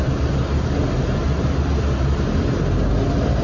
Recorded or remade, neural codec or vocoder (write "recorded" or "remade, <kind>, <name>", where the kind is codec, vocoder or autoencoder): recorded